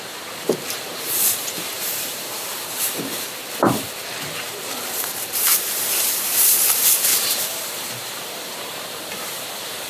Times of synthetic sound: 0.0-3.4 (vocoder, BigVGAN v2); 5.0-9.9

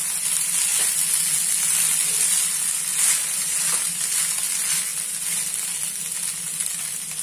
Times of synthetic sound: 3.2-4.1 (vocoder, BigVGAN v2)